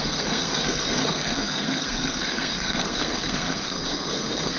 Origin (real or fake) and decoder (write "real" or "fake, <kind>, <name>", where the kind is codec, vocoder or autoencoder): fake, codec, SNAC